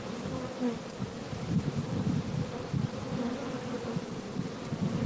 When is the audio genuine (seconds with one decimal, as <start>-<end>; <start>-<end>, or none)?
0.0-5.1

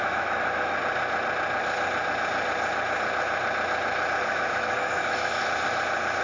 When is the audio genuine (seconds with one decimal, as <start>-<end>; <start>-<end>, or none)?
0.8-4.2; 5.4-6.2

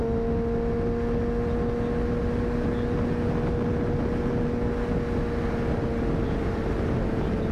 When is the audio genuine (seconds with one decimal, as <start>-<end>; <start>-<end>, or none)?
0.0-7.5

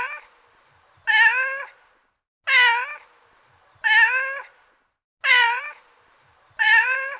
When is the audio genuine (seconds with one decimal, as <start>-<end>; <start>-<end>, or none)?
1.0-5.3